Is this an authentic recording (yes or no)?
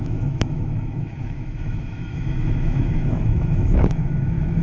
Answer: no